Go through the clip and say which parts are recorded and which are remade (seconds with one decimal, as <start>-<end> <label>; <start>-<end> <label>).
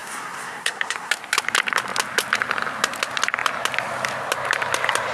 0.0-1.1 remade; 1.1-5.1 recorded